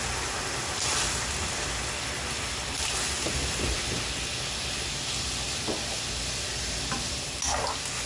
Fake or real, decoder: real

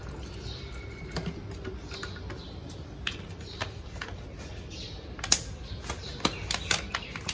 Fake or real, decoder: real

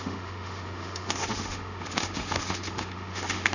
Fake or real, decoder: fake, autoencoder, DAC-VAE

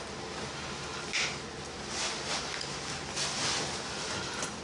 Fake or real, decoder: real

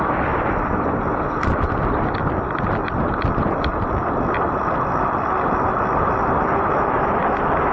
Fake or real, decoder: real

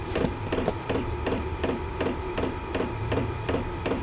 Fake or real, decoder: fake, vocoder, BigVGAN v2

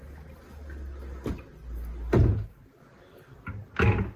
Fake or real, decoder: real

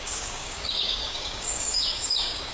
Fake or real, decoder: fake, codec, DAC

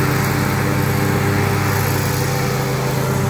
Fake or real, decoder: real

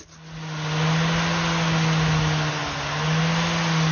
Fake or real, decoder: real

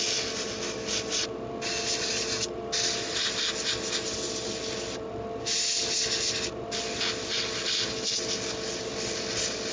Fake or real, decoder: real